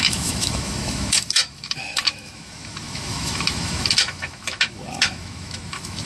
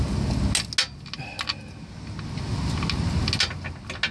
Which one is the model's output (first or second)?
first